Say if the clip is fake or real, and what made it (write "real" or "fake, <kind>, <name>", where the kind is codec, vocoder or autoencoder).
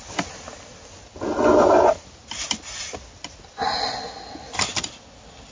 real